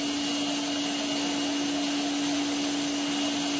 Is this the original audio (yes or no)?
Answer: yes